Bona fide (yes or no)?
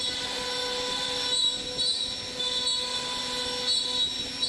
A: yes